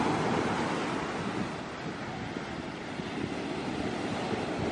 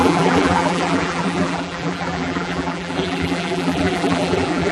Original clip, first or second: first